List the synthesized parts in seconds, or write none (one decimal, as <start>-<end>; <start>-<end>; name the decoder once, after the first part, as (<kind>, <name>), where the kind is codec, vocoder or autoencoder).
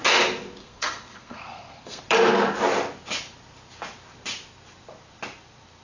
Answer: 0.6-2.0 (codec, SNAC)